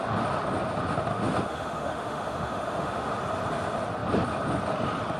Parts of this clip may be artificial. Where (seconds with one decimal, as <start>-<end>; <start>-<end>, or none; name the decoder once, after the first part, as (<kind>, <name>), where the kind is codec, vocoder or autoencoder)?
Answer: 1.1-3.2 (autoencoder, DAC-VAE)